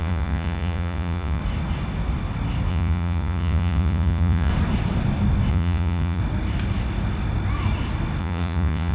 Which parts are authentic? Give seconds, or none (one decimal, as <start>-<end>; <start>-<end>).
1.4-2.7; 4.5-5.5; 6.2-8.2